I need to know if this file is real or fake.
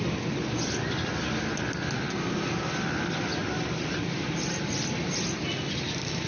real